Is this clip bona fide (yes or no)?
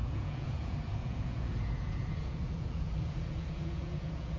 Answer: no